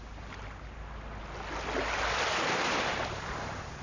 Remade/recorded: recorded